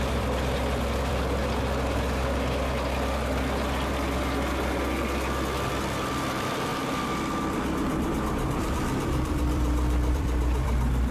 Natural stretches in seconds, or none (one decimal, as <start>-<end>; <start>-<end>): 1.4-5.7